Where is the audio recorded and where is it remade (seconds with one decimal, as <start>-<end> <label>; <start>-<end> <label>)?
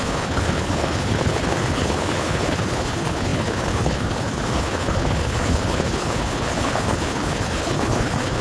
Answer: 0.0-8.4 remade